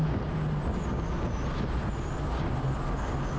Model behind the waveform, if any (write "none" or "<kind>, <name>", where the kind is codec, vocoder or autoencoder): none